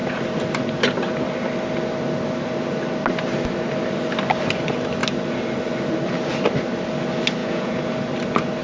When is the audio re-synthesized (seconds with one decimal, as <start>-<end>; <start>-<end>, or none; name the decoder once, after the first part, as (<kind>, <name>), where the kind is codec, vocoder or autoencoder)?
7.4-7.9 (vocoder, Vocos)